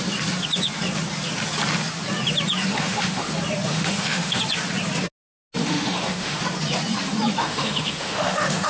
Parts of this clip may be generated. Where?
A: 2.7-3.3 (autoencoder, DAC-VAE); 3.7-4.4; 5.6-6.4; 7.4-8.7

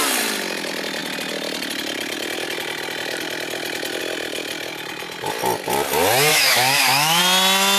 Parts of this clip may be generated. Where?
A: 6.3-7.2 (autoencoder, DAC-VAE)